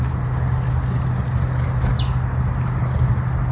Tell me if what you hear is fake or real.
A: real